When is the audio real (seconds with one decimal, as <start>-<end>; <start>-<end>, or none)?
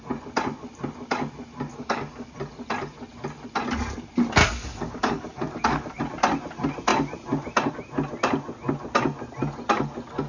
0.0-1.7; 2.3-4.4; 6.0-10.3